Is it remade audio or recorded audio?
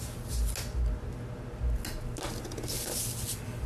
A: recorded